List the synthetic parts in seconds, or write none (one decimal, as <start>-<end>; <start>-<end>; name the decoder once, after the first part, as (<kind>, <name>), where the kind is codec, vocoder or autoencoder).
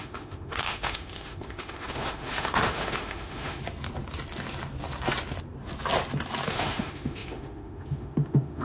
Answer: 0.0-3.6 (autoencoder, DAC-VAE); 6.5-8.6